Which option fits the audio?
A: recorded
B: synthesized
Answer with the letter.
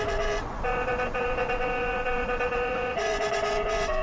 B